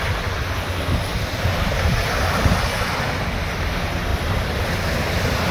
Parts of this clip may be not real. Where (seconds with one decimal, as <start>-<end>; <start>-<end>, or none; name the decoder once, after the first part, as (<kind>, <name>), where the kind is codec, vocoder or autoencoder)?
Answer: 4.1-5.5 (vocoder, BigVGAN v2)